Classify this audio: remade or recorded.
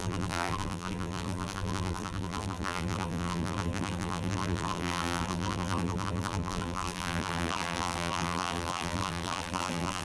remade